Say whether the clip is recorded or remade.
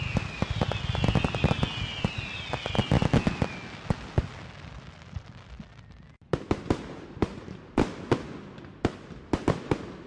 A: recorded